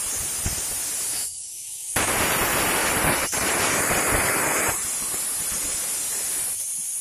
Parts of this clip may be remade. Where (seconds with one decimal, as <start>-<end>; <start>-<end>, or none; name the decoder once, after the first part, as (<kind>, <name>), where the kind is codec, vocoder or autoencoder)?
1.1-2.1 (autoencoder, DAC-VAE)

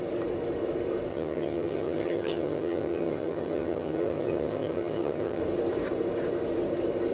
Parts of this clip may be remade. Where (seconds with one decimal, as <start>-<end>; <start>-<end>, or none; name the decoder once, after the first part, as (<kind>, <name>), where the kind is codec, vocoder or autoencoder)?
1.1-5.4 (vocoder, HiFi-GAN)

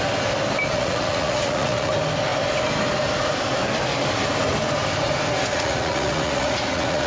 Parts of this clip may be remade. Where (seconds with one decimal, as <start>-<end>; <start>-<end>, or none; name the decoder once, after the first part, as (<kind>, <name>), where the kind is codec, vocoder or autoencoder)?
0.7-1.9 (vocoder, Vocos); 5.5-7.1